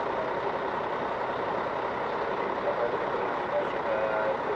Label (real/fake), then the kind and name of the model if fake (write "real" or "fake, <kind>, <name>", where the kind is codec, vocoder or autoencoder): real